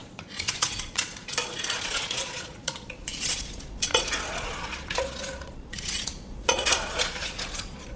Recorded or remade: remade